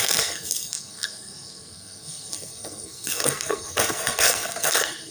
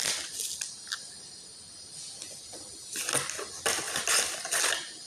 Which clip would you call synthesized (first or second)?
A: first